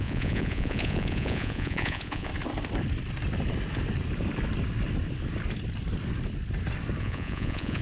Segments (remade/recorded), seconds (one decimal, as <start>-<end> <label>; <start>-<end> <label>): 0.0-2.3 remade; 2.3-7.0 recorded; 7.0-7.8 remade

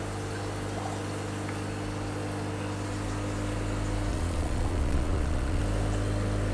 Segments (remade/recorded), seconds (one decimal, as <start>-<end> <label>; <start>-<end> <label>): 0.0-4.1 recorded; 4.1-5.6 remade; 5.6-6.5 recorded

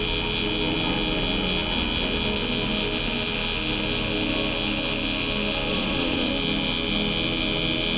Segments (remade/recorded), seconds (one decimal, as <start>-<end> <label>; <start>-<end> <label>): 0.0-5.7 recorded; 5.7-6.3 remade; 6.3-8.0 recorded

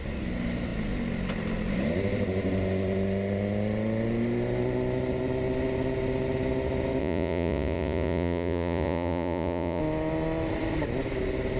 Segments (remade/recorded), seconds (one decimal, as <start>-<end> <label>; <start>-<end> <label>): 0.0-7.0 recorded; 7.0-9.8 remade; 9.8-11.6 recorded

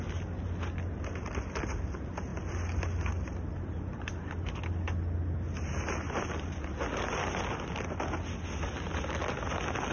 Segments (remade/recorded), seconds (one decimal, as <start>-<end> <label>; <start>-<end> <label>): 0.0-9.9 recorded

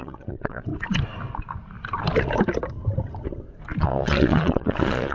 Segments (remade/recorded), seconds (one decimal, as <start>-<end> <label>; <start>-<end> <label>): 0.0-0.7 remade; 0.7-3.8 recorded; 3.8-5.1 remade